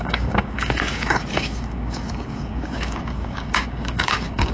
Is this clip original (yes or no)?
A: no